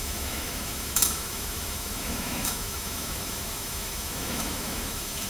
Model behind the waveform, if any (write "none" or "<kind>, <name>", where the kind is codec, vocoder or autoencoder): autoencoder, DAC-VAE